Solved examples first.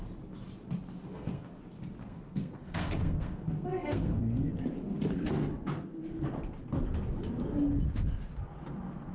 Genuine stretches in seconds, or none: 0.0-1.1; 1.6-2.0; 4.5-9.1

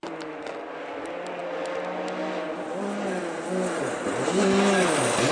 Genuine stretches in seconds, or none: 0.0-5.3

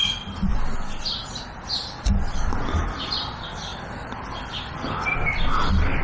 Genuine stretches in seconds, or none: 0.0-6.0

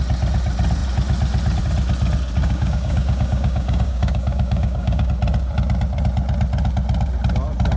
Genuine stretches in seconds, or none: 0.0-2.4; 5.1-7.8

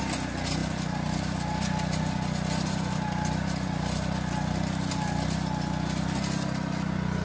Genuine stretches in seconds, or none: 0.0-7.2

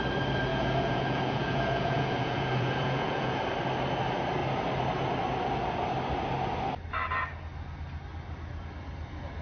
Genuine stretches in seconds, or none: 0.0-0.5; 3.4-9.4